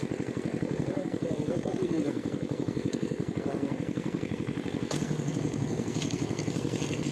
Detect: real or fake fake